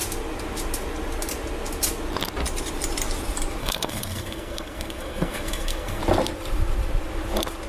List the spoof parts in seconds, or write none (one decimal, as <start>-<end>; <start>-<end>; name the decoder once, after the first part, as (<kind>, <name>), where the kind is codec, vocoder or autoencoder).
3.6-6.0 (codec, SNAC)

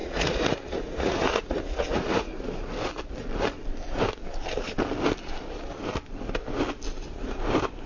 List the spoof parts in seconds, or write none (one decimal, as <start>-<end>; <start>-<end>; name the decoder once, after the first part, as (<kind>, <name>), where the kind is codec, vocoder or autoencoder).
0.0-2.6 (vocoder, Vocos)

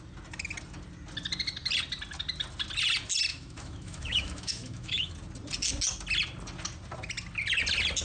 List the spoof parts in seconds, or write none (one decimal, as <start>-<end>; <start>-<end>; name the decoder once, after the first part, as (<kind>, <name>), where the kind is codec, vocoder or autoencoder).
3.3-5.1 (autoencoder, DAC-VAE)